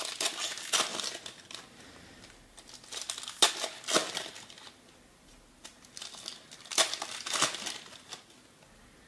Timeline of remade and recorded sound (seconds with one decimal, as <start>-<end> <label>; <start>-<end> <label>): 0.0-9.1 recorded